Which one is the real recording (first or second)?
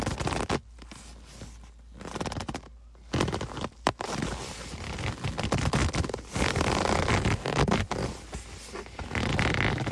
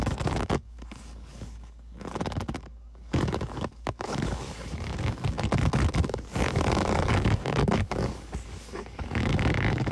first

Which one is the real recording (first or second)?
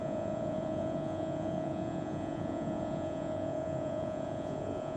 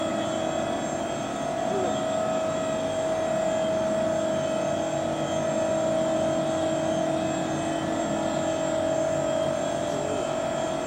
second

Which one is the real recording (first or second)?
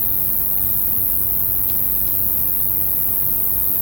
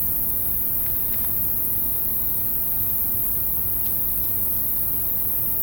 first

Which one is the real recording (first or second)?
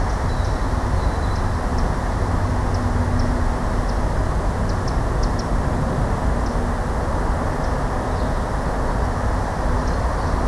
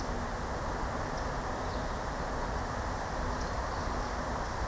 first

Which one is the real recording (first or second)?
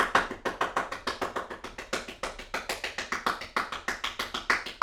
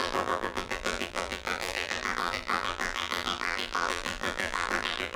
first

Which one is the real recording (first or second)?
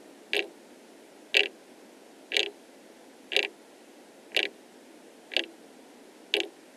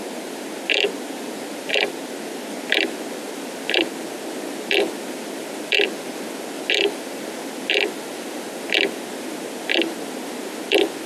first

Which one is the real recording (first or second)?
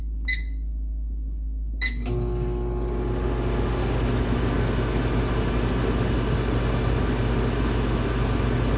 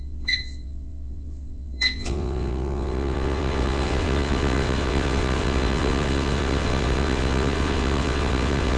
first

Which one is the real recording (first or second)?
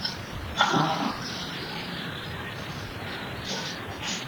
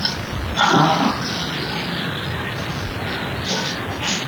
second